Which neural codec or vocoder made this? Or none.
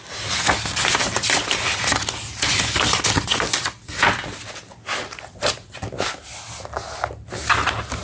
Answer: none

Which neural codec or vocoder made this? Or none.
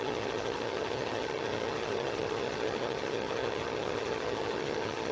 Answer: vocoder, HiFi-GAN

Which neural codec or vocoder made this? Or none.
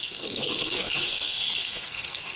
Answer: codec, SNAC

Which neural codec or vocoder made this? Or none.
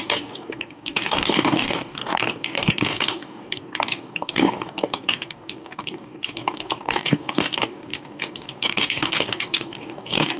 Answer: codec, DAC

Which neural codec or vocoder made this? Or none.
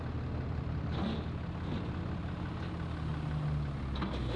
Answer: none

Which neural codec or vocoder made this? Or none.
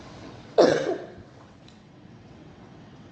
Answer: vocoder, WaveNeXt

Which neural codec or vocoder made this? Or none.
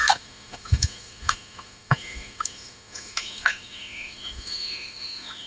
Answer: autoencoder, DAC-VAE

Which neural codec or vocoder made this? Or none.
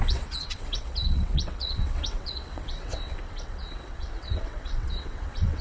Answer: vocoder, WaveNeXt